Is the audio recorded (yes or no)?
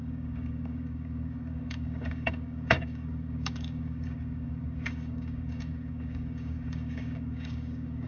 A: no